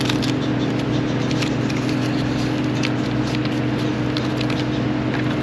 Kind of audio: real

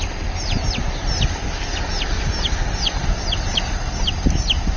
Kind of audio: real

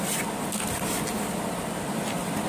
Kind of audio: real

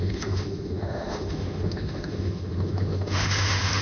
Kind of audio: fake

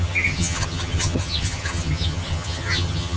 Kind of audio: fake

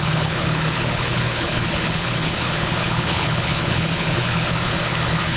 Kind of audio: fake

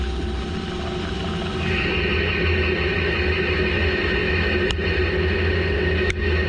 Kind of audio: real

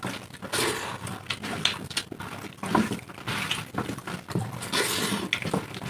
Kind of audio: real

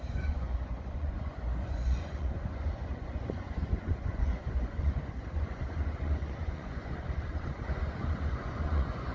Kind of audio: fake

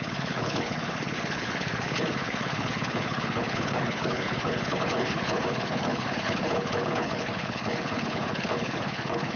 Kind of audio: fake